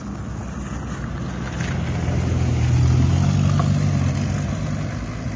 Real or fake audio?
real